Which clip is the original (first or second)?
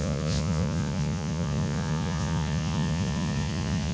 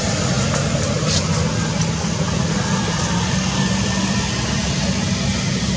second